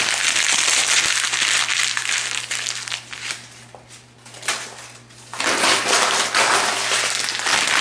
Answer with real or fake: real